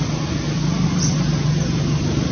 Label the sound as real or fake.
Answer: real